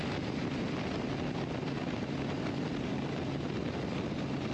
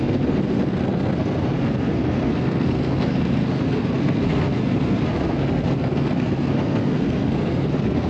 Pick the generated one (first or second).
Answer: second